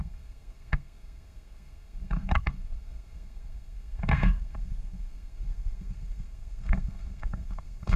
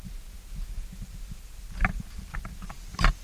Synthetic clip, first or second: first